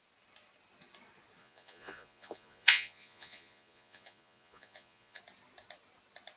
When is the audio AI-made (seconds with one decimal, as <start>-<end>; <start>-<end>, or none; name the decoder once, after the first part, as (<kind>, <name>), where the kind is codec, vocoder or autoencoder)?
1.4-5.2 (vocoder, Vocos)